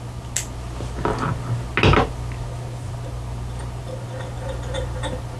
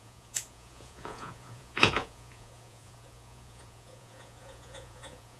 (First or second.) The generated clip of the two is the second